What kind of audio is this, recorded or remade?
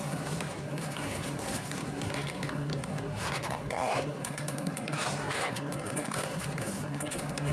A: remade